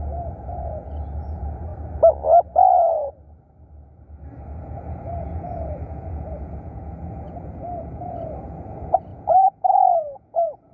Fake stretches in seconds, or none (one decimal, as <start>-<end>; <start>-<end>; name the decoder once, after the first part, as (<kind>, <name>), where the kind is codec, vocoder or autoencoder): 0.0-1.7 (vocoder, Vocos); 4.4-10.7